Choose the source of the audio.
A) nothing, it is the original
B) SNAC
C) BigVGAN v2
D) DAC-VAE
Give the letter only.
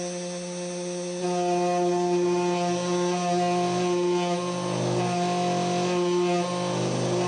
A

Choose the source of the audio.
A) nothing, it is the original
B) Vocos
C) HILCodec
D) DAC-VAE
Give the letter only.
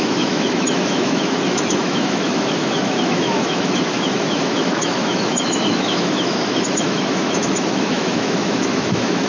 D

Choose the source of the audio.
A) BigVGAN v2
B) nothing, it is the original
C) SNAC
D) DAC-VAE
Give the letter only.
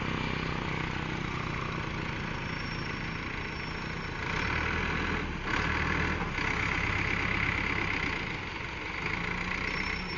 B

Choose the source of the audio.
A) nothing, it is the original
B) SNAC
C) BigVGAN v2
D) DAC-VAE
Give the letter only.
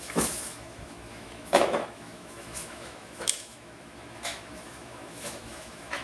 D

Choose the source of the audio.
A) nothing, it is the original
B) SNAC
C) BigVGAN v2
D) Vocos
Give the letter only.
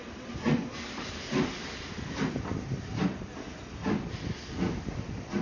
A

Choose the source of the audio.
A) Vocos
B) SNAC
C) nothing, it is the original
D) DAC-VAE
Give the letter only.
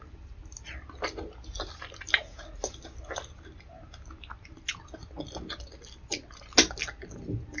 C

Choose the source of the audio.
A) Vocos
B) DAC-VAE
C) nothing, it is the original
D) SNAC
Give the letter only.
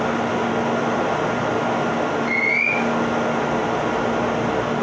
C